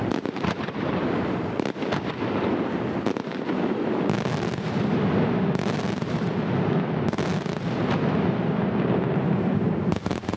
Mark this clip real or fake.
real